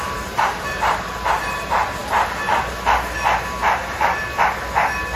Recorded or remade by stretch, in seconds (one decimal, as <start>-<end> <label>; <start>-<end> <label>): 0.0-2.0 remade; 2.0-5.2 recorded